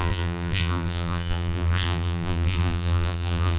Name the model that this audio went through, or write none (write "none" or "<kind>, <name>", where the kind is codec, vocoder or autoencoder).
vocoder, BigVGAN v2